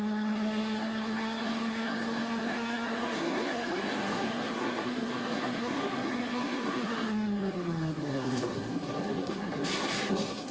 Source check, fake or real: fake